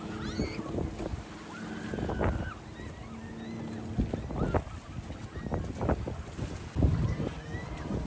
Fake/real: real